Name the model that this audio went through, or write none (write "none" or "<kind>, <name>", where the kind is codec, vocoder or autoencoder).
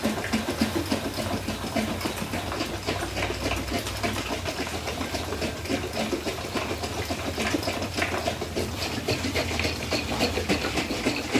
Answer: none